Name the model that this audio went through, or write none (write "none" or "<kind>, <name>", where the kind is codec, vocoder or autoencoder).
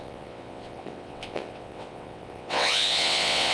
vocoder, WaveNeXt